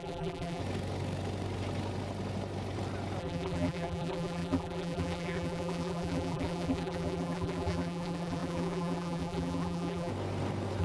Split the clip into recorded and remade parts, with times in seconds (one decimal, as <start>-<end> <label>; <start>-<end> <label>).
0.0-0.6 remade; 0.6-3.2 recorded; 3.2-10.1 remade; 10.1-10.8 recorded